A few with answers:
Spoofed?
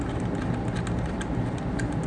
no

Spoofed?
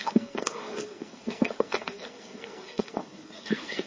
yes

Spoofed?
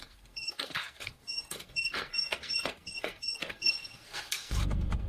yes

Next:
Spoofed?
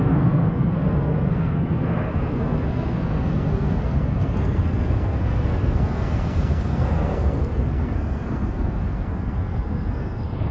yes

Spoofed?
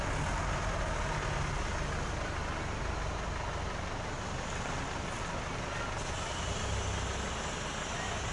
no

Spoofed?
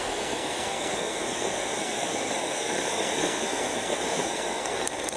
yes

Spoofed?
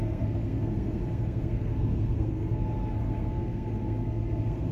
yes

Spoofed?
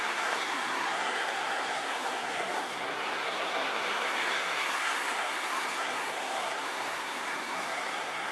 yes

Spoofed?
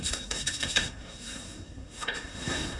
yes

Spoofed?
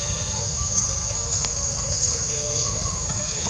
yes